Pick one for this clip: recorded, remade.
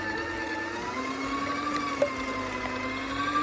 recorded